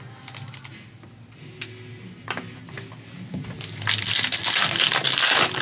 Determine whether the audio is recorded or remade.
recorded